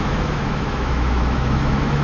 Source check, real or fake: fake